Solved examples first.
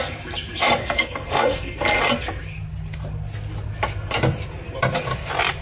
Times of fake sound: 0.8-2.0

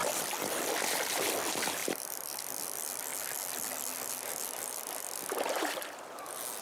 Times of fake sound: 0.0-0.8; 1.8-2.5

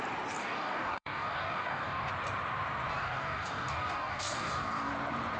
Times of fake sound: 0.4-2.1; 2.9-4.9

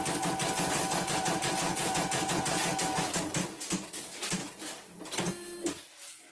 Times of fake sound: 1.7-2.7

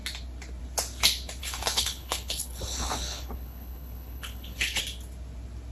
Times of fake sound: 1.4-4.8

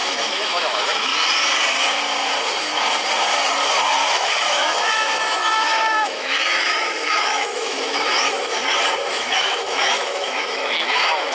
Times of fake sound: 0.0-1.1; 4.1-8.6; 9.1-11.3

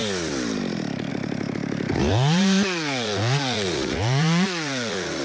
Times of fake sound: 1.9-5.2